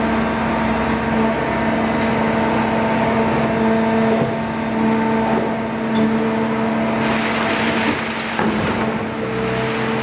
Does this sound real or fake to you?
real